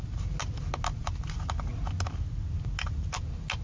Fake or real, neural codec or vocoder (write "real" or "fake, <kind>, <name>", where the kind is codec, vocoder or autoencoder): real